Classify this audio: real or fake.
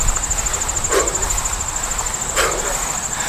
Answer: real